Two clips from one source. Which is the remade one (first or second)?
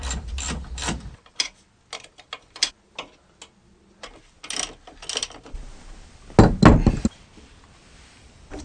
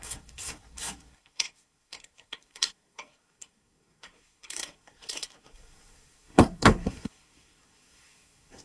second